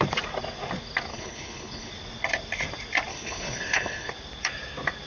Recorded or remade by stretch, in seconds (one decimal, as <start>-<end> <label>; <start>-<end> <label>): 0.0-1.1 recorded; 1.1-1.9 remade; 1.9-3.1 recorded; 3.1-4.1 remade; 4.1-5.1 recorded